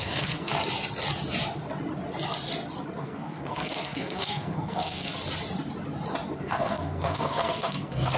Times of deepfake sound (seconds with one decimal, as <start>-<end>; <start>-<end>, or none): 0.0-0.5; 3.0-5.1; 6.4-8.2